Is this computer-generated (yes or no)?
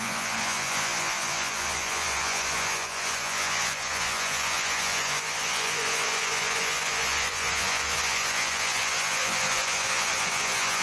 yes